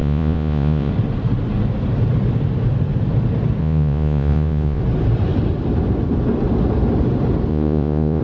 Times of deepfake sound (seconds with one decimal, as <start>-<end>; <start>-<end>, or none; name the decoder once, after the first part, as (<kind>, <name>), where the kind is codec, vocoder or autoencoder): 0.0-0.9 (vocoder, Vocos); 3.6-4.8; 7.5-8.2